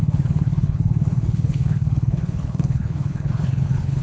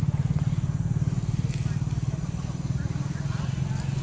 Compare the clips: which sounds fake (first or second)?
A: first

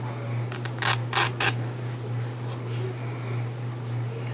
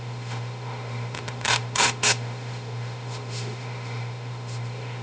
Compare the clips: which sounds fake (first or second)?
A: second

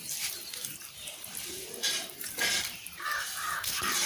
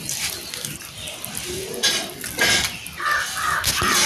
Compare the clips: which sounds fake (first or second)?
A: first